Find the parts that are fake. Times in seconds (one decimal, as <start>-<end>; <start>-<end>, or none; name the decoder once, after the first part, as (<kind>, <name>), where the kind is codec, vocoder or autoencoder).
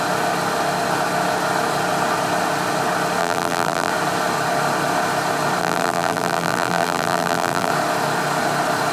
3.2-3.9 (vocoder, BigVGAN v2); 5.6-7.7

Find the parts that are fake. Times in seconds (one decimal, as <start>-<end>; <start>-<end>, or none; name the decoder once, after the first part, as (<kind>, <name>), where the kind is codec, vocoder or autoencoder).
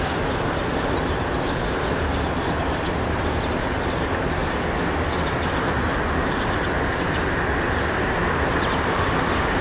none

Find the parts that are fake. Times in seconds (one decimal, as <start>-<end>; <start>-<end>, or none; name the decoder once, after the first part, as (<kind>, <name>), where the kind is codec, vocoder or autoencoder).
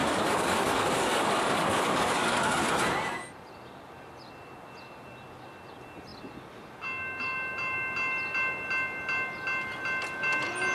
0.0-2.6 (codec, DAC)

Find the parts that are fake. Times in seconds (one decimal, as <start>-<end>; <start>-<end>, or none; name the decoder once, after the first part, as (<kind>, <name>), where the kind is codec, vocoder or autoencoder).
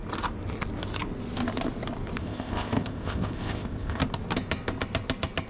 2.2-4.0 (codec, ZipCodec)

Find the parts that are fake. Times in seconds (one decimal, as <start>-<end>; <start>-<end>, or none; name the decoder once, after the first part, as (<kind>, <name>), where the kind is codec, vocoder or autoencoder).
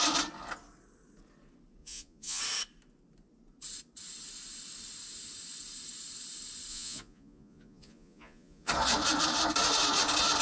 1.8-2.4 (vocoder, Vocos); 6.7-8.7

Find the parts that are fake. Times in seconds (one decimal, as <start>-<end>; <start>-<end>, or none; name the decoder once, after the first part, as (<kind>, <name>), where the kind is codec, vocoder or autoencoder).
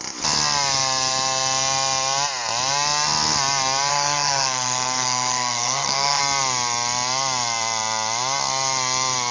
3.9-6.2 (codec, SNAC)